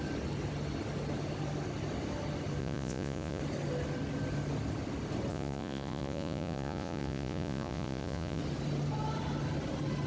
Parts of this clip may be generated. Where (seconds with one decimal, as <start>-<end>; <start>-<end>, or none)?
2.6-3.4; 5.3-8.4